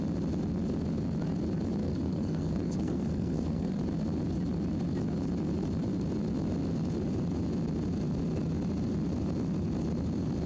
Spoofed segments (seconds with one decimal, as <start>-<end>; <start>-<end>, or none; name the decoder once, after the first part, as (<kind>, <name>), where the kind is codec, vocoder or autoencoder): 1.8-3.8 (codec, SNAC)